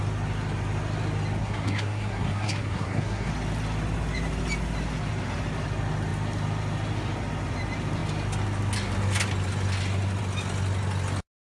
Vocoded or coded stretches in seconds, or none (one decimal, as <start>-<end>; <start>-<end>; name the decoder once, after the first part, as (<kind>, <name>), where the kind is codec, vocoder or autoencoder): 1.4-3.3 (codec, SNAC)